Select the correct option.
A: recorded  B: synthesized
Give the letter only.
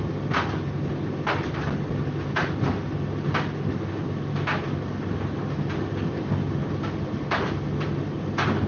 A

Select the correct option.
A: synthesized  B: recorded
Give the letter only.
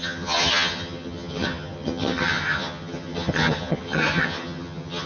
A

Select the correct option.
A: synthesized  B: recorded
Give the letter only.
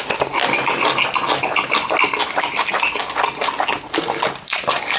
B